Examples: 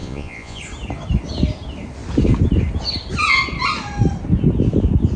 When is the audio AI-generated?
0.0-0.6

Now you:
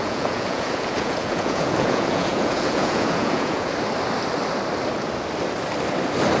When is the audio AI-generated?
0.0-3.7

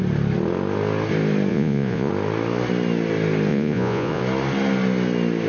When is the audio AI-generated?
1.5-2.1; 3.5-4.2

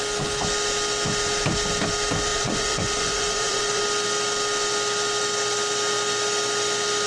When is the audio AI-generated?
2.3-3.8

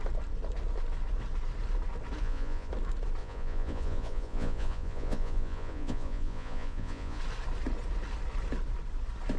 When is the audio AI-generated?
2.2-2.7; 3.2-7.2

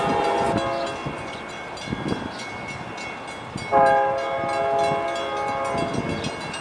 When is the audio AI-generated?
1.0-1.5